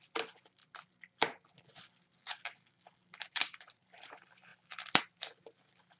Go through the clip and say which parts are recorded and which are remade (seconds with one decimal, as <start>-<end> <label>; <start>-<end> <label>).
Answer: 0.0-0.6 remade; 0.6-3.2 recorded; 3.2-6.0 remade